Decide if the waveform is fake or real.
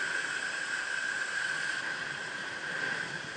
fake